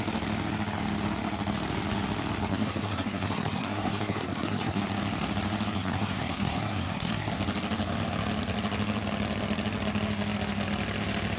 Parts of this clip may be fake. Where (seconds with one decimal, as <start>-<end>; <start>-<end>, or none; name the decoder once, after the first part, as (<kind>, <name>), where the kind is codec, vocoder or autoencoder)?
2.5-4.8 (codec, SNAC); 5.8-7.3